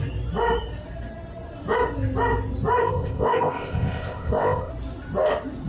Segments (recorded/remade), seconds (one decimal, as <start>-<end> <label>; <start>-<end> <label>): 0.0-2.8 recorded; 2.8-4.7 remade; 4.7-5.7 recorded